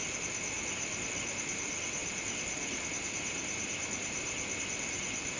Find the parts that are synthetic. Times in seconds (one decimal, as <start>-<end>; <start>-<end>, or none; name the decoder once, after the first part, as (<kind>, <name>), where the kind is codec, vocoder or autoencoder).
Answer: none